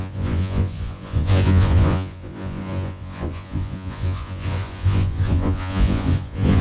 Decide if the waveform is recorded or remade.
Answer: remade